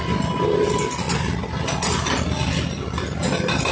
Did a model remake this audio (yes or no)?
no